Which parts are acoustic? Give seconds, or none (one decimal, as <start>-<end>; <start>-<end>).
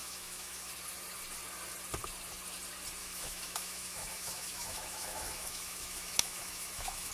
0.7-3.0